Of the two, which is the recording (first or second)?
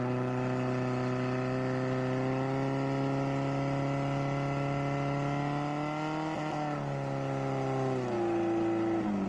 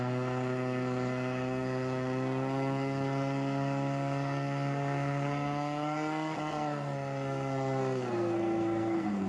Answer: first